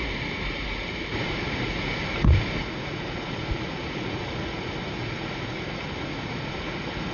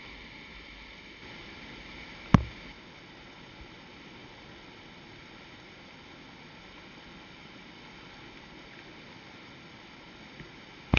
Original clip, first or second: second